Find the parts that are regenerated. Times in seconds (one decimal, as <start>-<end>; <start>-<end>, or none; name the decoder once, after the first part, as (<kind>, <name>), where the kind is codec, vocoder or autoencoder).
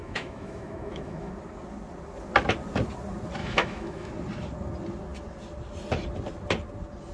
0.0-1.3 (autoencoder, DAC-VAE); 3.4-4.1